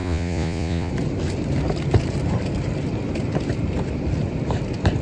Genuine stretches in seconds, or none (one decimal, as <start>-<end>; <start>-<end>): 0.9-5.0